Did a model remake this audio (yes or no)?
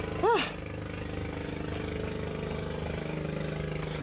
no